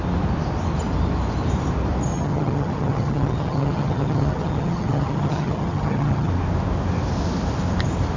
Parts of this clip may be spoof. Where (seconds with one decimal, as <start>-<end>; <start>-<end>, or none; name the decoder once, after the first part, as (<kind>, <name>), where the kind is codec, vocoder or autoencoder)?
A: 2.1-6.3 (vocoder, HiFi-GAN)